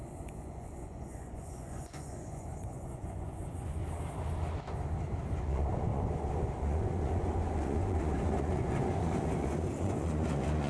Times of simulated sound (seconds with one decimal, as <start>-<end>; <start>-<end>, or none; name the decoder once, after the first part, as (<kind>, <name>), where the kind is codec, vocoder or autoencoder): 0.0-3.8 (vocoder, Vocos); 5.4-10.7